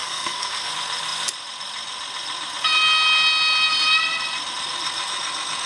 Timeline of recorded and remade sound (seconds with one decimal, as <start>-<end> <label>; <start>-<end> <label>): 0.0-0.7 remade; 0.7-5.7 recorded